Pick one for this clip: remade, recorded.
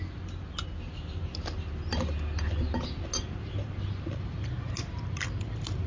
recorded